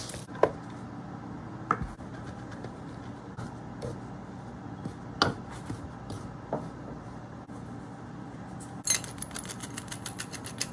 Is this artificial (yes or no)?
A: no